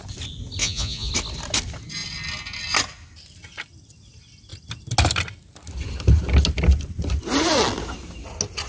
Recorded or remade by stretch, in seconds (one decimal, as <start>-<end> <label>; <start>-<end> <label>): 0.0-0.6 recorded; 0.6-1.1 remade; 1.1-8.7 recorded